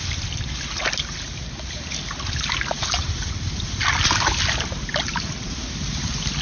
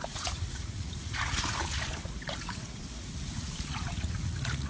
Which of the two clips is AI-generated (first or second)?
second